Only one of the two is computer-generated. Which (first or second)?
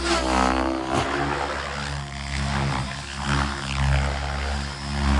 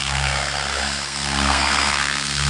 second